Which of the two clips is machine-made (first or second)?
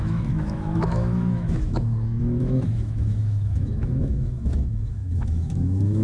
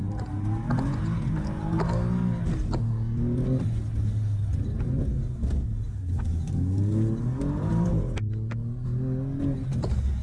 first